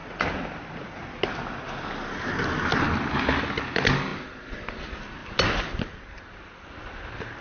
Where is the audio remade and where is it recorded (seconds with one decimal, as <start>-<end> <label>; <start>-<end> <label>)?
0.0-7.4 recorded